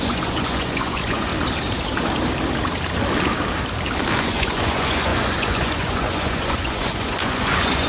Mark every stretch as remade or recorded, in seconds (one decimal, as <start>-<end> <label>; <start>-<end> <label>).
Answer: 0.0-1.3 remade; 1.3-4.2 recorded; 4.2-7.9 remade